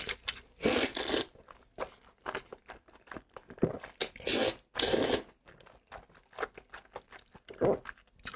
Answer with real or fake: real